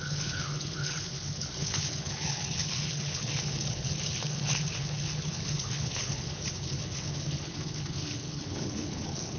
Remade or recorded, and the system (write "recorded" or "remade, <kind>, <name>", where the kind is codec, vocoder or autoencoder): remade, codec, HILCodec